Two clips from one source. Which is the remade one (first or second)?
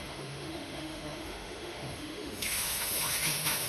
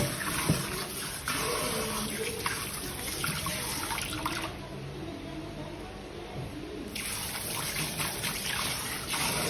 first